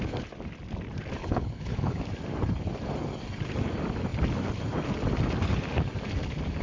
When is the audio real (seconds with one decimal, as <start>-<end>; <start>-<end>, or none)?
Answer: 0.0-1.2; 2.0-6.6